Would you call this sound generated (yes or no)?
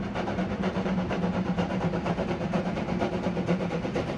yes